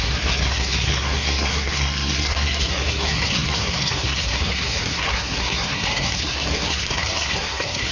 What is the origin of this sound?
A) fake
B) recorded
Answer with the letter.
A